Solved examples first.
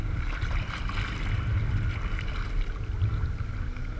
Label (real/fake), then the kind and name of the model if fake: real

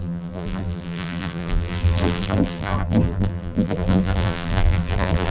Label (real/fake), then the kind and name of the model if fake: fake, vocoder, BigVGAN v2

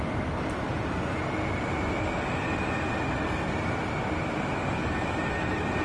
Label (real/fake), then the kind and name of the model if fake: real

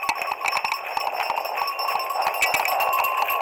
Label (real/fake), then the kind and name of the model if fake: real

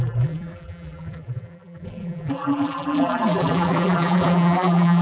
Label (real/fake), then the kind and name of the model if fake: fake, vocoder, BigVGAN v2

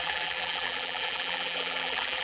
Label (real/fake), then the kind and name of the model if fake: fake, vocoder, BigVGAN v2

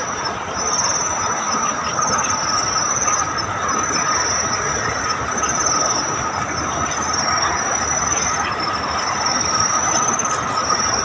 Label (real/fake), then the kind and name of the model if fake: fake, vocoder, BigVGAN v2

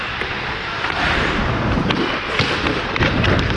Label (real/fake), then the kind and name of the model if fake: fake, vocoder, BigVGAN v2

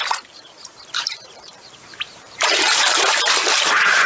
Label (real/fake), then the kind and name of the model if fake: fake, vocoder, BigVGAN v2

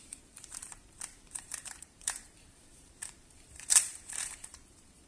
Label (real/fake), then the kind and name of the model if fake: fake, vocoder, BigVGAN v2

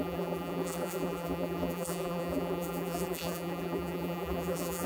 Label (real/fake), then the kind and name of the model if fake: fake, vocoder, BigVGAN v2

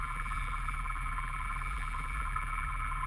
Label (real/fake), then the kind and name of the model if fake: fake, vocoder, BigVGAN v2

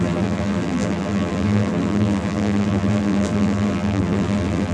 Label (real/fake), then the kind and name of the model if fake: fake, vocoder, BigVGAN v2